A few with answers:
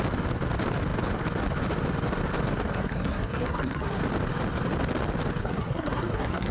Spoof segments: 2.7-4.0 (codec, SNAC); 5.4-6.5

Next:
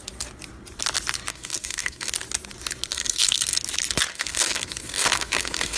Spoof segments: 1.3-2.1 (codec, SNAC); 2.9-3.6; 4.1-5.8

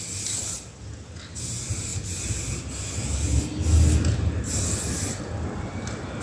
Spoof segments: none

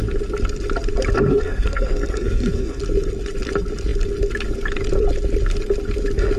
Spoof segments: 1.3-2.8 (codec, SNAC)

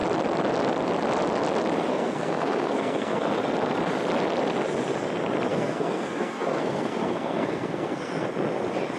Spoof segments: 1.9-3.3 (codec, SNAC); 5.5-8.3

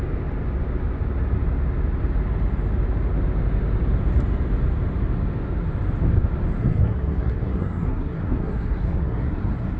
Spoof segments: 6.6-9.8 (codec, SNAC)